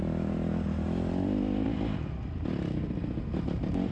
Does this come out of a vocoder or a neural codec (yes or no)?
no